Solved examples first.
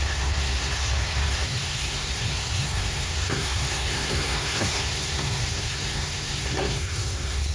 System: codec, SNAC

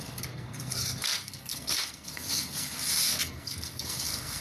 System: codec, SNAC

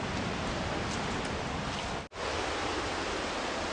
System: none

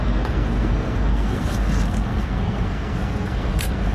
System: codec, SNAC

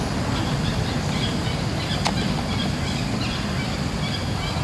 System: none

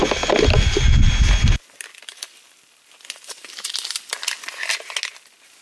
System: none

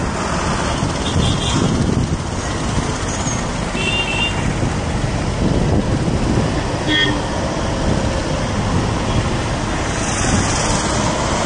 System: none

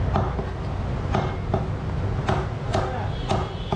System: none